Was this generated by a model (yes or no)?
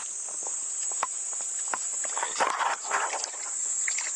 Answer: no